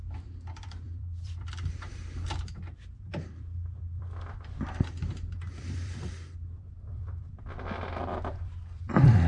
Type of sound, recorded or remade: remade